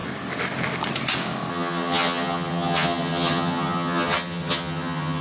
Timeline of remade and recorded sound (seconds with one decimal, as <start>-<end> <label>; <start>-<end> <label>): 0.0-1.5 recorded; 1.5-5.2 remade